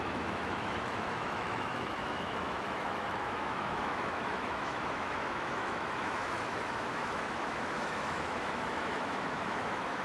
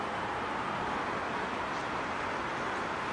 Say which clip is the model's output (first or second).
first